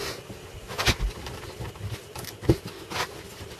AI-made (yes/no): no